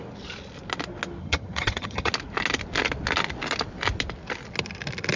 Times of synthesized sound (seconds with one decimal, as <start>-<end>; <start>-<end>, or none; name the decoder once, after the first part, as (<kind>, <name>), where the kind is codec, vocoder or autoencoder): 1.2-2.1 (vocoder, HiFi-GAN)